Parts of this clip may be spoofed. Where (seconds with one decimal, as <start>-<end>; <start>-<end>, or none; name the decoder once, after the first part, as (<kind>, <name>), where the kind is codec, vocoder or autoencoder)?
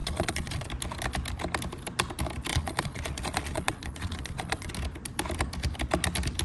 0.0-0.7 (vocoder, Vocos); 2.5-4.7